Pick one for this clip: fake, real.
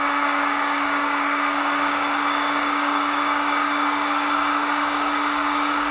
fake